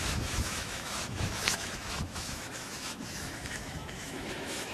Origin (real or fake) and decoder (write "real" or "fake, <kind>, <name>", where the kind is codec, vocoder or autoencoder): fake, autoencoder, DAC-VAE